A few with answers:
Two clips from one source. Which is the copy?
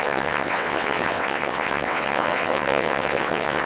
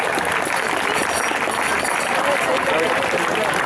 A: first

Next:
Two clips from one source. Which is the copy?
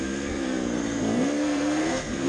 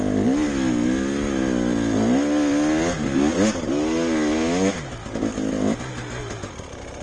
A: first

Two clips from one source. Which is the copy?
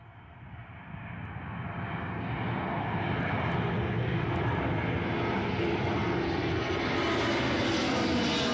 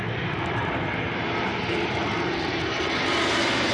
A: second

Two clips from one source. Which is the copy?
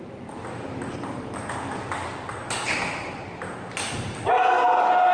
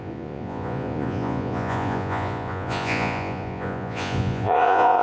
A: second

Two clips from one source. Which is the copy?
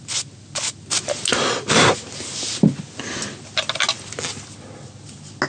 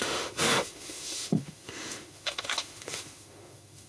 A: second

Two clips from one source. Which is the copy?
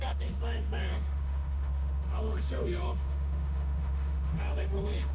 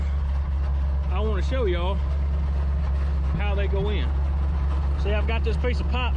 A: first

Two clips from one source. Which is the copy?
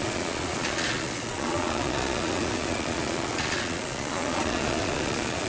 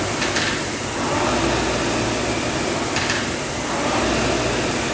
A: first